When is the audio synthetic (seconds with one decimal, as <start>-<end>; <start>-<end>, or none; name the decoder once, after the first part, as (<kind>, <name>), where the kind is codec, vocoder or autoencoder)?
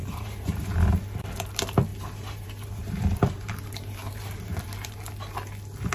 0.0-1.0 (vocoder, BigVGAN v2); 1.9-5.0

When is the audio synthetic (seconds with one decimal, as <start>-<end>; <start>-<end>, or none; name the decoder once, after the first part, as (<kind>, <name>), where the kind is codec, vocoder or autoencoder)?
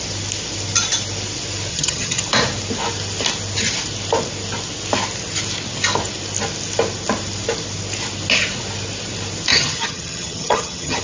1.7-2.2 (vocoder, HiFi-GAN); 9.5-11.0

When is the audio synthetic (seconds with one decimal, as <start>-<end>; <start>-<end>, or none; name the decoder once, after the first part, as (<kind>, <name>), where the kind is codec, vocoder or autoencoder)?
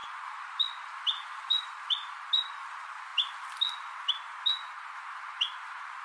none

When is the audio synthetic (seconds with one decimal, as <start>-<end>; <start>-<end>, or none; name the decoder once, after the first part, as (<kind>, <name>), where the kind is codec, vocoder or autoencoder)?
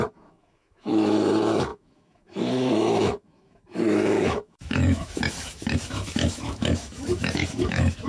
0.0-8.1 (autoencoder, DAC-VAE)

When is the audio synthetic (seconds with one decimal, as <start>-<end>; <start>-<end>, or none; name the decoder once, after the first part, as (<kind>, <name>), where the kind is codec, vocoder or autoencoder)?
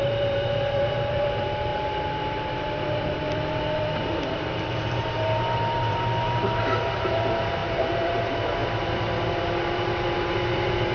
0.0-10.9 (vocoder, BigVGAN v2)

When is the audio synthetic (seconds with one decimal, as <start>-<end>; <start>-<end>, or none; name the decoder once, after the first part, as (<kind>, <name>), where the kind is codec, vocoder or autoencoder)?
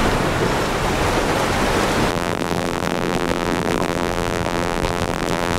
2.1-5.6 (vocoder, BigVGAN v2)